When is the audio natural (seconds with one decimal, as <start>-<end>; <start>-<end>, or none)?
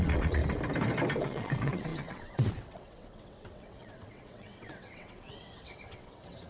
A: 0.4-1.2